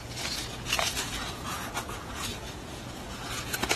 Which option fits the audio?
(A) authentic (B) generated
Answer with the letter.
B